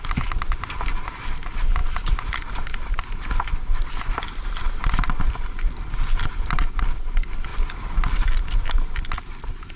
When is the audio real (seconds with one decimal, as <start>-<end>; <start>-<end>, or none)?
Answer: 0.0-1.8; 5.9-7.5; 9.2-9.8

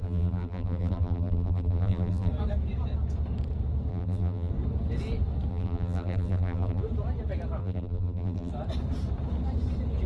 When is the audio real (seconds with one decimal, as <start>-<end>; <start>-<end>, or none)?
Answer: 2.3-3.9; 4.5-5.5; 6.8-7.6; 8.5-10.1

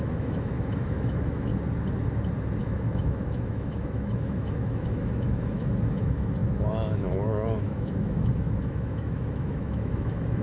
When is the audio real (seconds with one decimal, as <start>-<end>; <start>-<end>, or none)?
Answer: 1.5-2.6